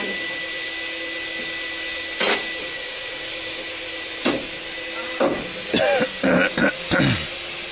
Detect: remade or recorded recorded